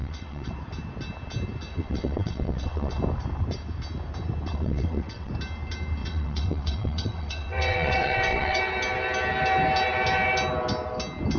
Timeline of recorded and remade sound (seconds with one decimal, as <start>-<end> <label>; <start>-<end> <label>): 0.0-0.5 remade; 0.5-1.7 recorded; 1.7-3.0 remade; 3.0-4.5 recorded; 4.5-5.3 remade; 5.3-6.0 recorded; 6.0-8.6 remade; 8.6-11.4 recorded